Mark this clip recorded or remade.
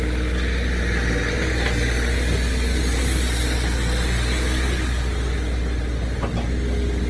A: recorded